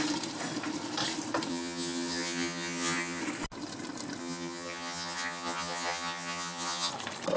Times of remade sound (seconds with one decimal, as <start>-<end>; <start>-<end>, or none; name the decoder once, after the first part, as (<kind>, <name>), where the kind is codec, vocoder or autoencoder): 1.5-3.2 (vocoder, HiFi-GAN); 4.2-6.9